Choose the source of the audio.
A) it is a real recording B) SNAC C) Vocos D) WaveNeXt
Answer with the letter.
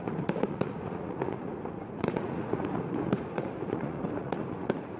C